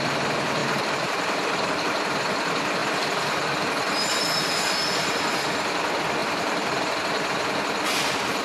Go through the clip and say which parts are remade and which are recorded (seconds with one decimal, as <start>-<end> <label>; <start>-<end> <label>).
0.0-0.6 recorded; 0.6-1.8 remade; 1.8-6.2 recorded; 6.2-7.0 remade; 7.0-8.4 recorded